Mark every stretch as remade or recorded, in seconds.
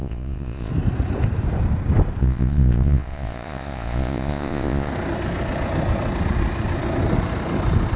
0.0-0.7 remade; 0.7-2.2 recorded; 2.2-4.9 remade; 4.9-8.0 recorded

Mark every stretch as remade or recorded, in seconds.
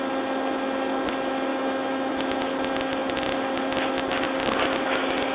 0.0-1.5 recorded; 1.5-2.3 remade; 2.3-5.3 recorded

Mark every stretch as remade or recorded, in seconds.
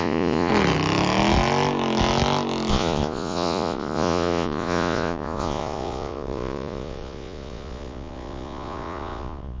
0.0-0.5 remade; 0.5-2.7 recorded; 2.7-9.6 remade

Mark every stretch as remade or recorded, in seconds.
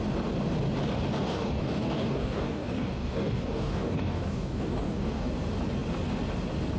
0.0-1.2 recorded; 1.2-5.3 remade; 5.3-6.8 recorded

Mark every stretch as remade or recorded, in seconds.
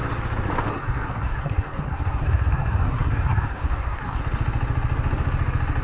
0.0-0.7 recorded; 0.7-4.2 remade; 4.2-5.8 recorded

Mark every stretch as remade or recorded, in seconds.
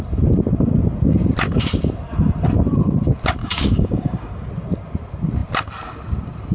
0.0-3.4 recorded; 3.4-4.5 remade; 4.5-6.5 recorded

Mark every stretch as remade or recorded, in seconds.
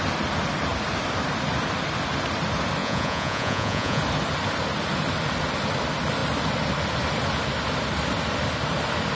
0.0-2.8 recorded; 2.8-4.0 remade; 4.0-9.1 recorded